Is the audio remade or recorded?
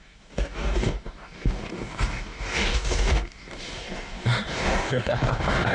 remade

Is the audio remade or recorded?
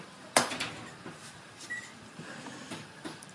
recorded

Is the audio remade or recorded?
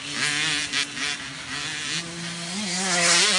recorded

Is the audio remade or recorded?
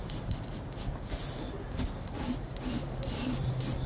recorded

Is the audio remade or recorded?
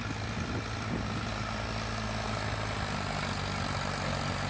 recorded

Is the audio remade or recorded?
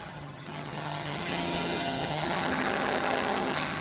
remade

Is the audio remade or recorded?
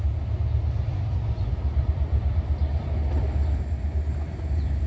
recorded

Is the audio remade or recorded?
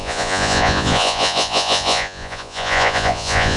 remade